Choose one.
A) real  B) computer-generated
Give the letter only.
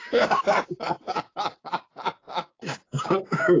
B